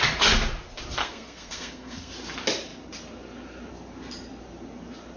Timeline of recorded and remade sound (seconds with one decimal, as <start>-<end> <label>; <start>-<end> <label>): 0.0-1.0 recorded; 1.0-2.1 remade; 2.1-5.2 recorded

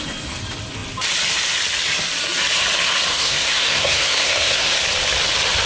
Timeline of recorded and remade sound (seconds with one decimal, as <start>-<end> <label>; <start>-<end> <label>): 0.0-3.1 recorded; 3.1-4.8 remade; 4.8-5.7 recorded

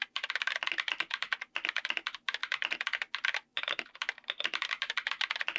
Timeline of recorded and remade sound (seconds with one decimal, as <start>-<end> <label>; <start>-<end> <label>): 0.0-5.6 recorded